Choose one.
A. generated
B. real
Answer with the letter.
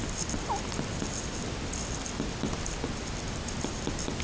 B